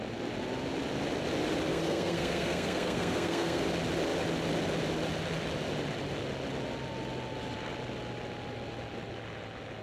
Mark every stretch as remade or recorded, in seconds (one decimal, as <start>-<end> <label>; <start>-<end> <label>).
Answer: 0.0-1.7 recorded; 1.7-3.6 remade; 3.6-9.8 recorded